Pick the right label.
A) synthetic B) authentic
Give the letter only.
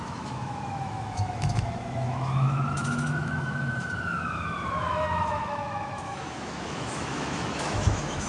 A